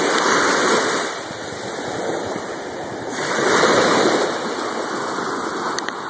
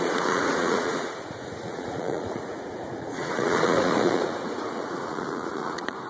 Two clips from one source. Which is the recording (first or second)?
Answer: first